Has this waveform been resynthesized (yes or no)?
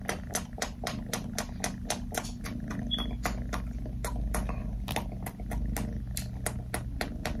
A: no